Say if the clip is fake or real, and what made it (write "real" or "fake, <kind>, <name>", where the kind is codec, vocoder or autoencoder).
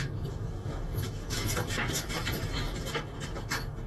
fake, autoencoder, DAC-VAE